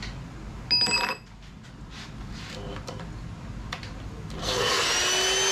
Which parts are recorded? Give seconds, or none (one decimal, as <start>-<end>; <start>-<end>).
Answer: 0.0-4.4; 4.9-5.5